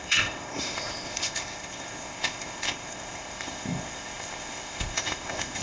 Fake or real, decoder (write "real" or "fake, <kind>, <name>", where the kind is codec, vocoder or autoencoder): fake, codec, ZipCodec